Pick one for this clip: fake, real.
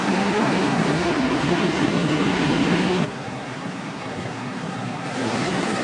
fake